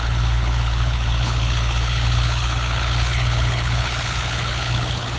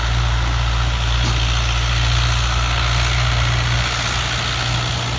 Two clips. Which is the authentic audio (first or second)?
second